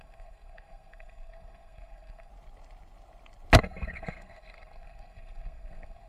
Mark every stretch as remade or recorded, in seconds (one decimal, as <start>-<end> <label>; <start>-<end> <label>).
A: 0.0-2.3 remade; 2.3-3.6 recorded; 3.6-6.1 remade